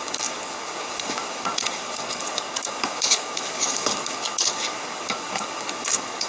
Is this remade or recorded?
remade